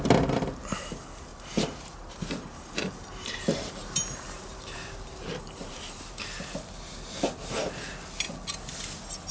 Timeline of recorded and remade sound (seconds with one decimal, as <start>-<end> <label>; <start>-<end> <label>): 0.0-1.3 recorded; 1.3-6.2 remade; 6.2-9.3 recorded